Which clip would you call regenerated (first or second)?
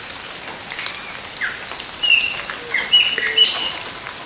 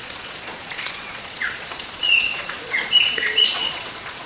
second